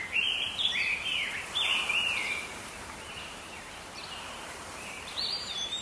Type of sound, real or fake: fake